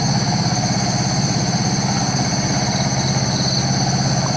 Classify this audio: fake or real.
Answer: real